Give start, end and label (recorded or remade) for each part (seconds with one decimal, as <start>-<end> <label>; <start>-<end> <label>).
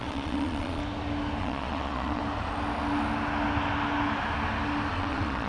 0.0-0.8 remade; 0.8-1.4 recorded; 1.4-2.2 remade; 2.2-4.9 recorded; 4.9-5.5 remade